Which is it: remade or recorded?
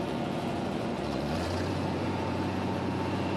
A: remade